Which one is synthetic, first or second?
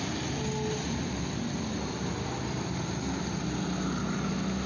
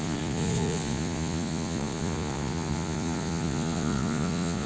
second